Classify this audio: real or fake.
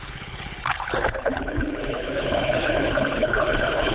fake